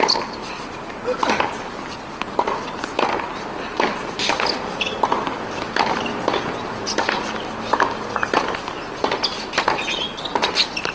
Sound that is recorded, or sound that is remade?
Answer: recorded